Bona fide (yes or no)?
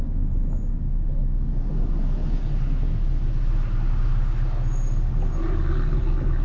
yes